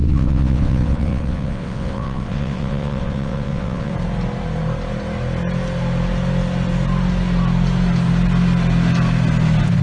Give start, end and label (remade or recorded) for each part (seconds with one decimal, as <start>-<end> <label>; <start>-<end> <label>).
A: 0.0-3.9 remade; 3.9-9.8 recorded